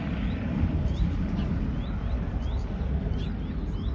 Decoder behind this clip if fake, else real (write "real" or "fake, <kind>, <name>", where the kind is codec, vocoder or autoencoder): real